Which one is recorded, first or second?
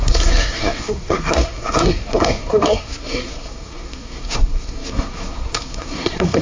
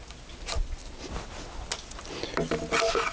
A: second